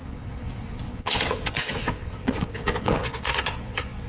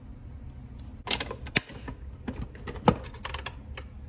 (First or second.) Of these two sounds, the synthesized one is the first